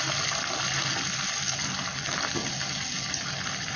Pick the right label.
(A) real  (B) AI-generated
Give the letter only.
A